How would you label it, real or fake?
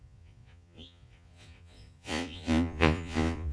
fake